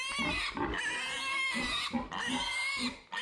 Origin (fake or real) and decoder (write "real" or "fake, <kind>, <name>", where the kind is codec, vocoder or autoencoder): real